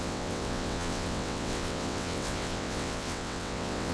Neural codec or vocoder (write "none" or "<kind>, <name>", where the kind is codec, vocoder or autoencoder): vocoder, WaveNeXt